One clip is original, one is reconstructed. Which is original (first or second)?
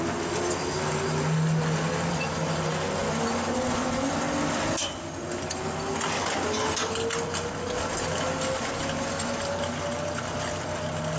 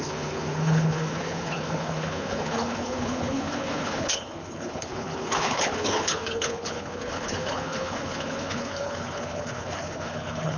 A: first